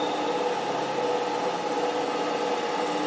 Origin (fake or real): real